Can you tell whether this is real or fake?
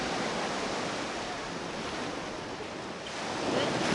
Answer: real